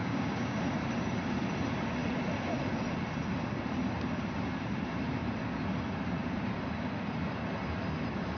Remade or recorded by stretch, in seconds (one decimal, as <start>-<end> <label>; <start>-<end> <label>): 0.0-0.6 remade; 0.6-8.4 recorded